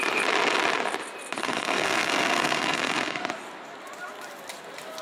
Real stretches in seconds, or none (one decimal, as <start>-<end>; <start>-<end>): 0.0-1.4; 3.2-5.0